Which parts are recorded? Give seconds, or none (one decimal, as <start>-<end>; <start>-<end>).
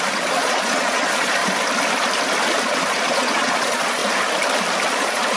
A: 1.4-2.6; 4.0-4.8